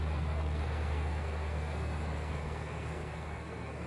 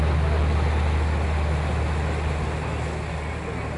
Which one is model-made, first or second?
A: first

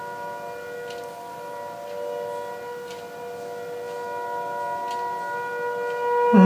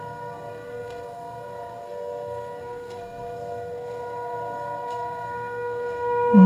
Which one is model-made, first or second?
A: second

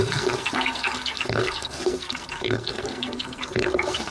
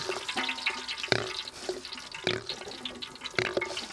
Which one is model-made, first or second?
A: first